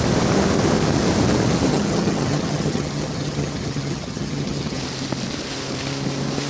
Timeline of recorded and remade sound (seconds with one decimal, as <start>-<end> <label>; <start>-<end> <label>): 0.0-1.7 recorded; 1.7-4.8 remade; 4.8-6.5 recorded